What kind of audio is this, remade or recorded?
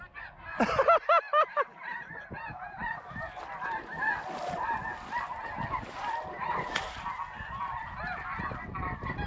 recorded